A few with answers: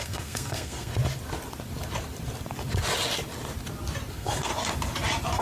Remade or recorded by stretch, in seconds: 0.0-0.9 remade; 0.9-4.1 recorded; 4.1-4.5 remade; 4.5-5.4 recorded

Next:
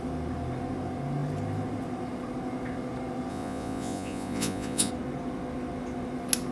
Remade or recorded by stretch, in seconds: 0.0-3.3 recorded; 3.3-4.9 remade; 4.9-6.5 recorded

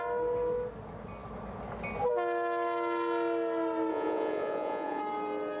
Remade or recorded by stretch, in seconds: 0.0-3.9 recorded; 3.9-5.0 remade; 5.0-5.6 recorded

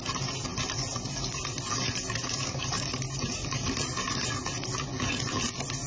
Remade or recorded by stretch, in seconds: 0.0-5.9 recorded